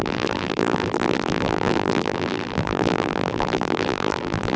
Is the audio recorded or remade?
remade